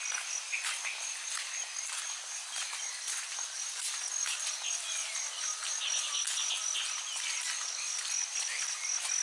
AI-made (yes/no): no